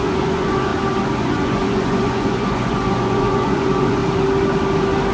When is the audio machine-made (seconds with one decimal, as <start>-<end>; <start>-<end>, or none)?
0.0-0.7; 1.2-4.0